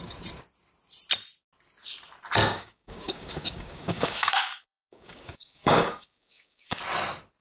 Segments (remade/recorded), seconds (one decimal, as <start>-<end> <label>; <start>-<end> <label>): 0.0-2.4 recorded; 2.4-6.8 remade; 6.8-7.4 recorded